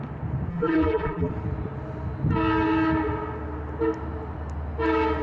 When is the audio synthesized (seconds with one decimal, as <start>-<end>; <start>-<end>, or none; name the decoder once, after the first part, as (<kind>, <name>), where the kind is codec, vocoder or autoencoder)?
0.5-1.3 (vocoder, BigVGAN v2)